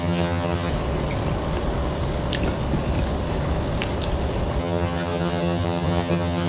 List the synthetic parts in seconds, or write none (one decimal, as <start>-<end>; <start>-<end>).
0.0-0.7; 4.6-6.5